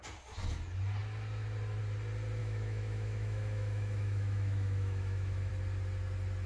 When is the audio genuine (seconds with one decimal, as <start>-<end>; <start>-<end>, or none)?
0.0-2.4; 5.5-6.5

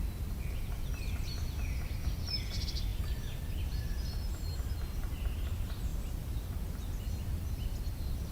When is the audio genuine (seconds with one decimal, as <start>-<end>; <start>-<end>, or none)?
0.0-8.3